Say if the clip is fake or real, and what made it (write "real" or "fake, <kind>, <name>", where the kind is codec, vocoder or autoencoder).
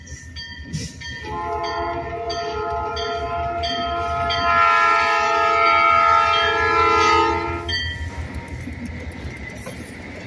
real